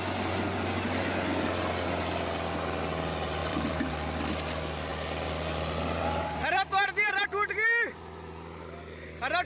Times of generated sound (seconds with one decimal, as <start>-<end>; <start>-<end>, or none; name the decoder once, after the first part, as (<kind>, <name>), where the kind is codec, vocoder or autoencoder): 3.4-3.9 (vocoder, BigVGAN v2); 4.9-7.1